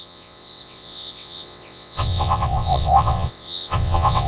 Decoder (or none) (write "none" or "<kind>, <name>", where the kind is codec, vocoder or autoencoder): vocoder, WaveNeXt